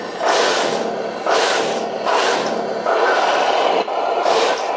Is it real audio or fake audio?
real